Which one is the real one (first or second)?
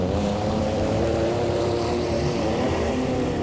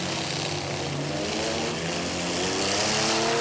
second